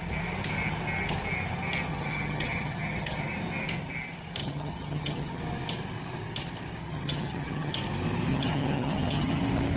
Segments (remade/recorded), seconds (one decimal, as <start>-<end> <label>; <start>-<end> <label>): 0.0-1.9 recorded; 1.9-3.4 remade; 3.4-4.4 recorded; 4.4-5.4 remade; 5.4-6.8 recorded; 6.8-7.7 remade; 7.7-8.3 recorded; 8.3-9.4 remade; 9.4-9.8 recorded